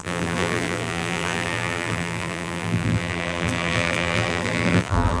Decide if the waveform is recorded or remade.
remade